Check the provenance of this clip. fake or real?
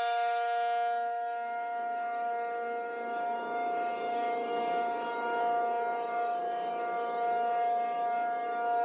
fake